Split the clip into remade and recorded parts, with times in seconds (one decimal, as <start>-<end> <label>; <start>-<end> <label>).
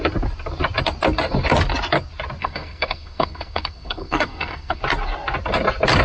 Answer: 0.0-2.4 recorded; 2.4-4.8 remade; 4.8-6.0 recorded